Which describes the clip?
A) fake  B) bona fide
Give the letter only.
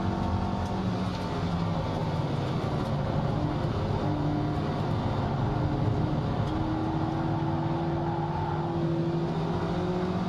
B